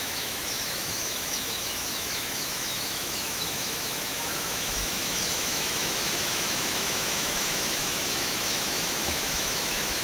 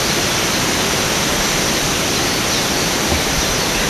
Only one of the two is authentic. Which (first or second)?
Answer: second